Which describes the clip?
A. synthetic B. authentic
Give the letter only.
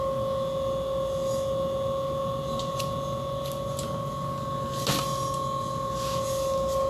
B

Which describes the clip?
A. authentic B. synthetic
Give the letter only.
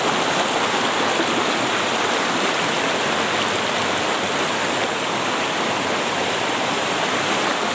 A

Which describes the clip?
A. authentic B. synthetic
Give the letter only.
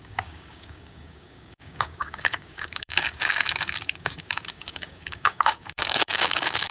B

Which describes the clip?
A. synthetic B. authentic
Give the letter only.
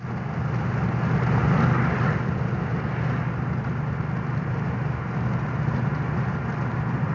B